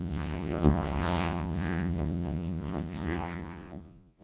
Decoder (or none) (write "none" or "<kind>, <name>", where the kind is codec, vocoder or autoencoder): vocoder, Vocos